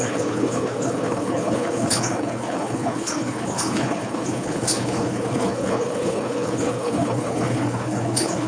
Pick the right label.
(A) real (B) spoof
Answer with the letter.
B